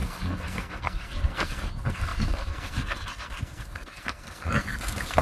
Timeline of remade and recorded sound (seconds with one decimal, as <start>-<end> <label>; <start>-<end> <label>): 0.0-5.2 remade

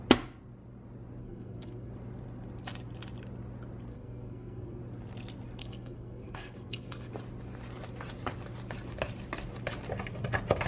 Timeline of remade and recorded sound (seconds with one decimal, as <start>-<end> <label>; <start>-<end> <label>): 0.0-1.2 recorded; 1.2-1.9 remade; 1.9-3.9 recorded; 3.9-4.8 remade; 4.8-5.6 recorded; 5.6-7.1 remade; 7.1-10.7 recorded

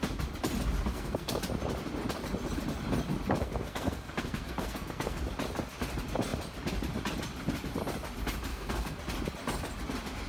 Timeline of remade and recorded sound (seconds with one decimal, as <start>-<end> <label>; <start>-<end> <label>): 0.0-0.9 recorded; 0.9-1.4 remade; 1.4-3.4 recorded; 3.4-5.2 remade; 5.2-8.5 recorded; 8.5-9.0 remade; 9.0-10.3 recorded

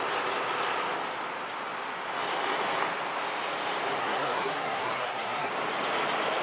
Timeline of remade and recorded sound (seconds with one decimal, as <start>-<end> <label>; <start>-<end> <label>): 0.0-4.0 recorded; 4.0-5.5 remade; 5.5-6.4 recorded